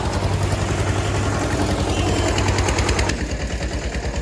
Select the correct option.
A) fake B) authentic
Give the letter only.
B